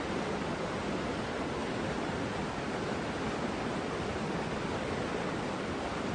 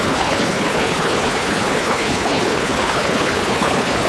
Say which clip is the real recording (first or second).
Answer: first